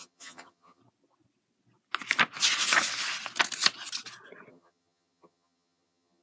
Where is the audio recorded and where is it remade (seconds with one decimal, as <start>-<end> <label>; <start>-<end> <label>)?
0.0-0.8 remade; 0.8-4.5 recorded; 4.5-6.2 remade